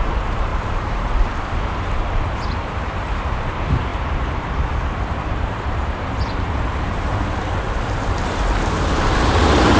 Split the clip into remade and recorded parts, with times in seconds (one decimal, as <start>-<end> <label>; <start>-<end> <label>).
0.0-9.8 remade